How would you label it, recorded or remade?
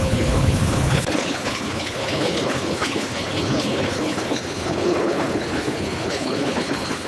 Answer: remade